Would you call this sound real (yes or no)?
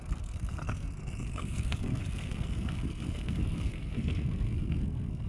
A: no